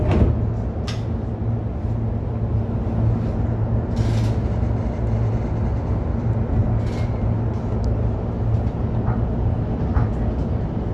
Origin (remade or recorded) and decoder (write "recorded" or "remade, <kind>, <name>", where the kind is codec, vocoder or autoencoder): recorded